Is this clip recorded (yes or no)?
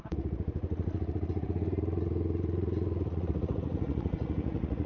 no